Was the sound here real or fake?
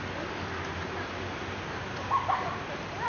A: real